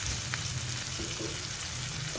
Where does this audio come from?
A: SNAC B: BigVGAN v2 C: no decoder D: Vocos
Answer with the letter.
C